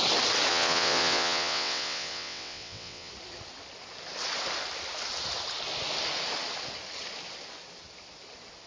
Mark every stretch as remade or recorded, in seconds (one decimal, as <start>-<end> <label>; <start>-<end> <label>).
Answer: 0.0-0.5 recorded; 0.5-3.1 remade; 3.1-8.7 recorded